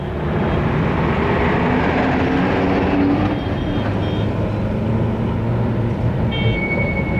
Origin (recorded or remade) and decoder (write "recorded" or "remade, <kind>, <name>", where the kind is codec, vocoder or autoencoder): recorded